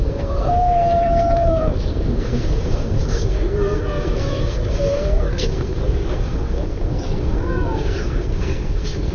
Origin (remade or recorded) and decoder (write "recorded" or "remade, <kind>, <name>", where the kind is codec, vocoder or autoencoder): remade, codec, SNAC